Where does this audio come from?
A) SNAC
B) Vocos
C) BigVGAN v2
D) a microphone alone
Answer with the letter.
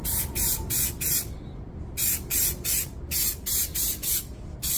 D